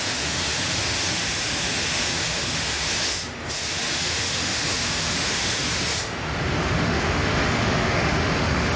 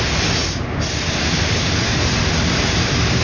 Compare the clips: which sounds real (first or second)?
second